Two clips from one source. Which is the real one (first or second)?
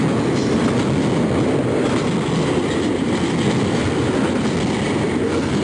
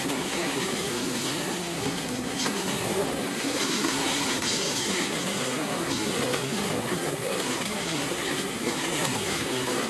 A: first